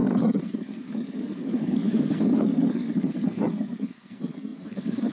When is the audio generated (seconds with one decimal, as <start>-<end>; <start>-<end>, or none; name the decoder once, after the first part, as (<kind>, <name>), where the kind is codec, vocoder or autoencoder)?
0.0-5.1 (codec, SNAC)